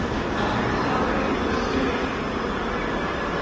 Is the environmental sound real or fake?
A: real